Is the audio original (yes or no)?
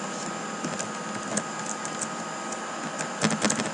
yes